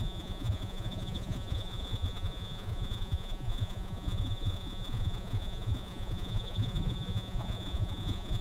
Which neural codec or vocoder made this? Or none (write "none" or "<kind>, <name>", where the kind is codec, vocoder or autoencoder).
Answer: vocoder, Vocos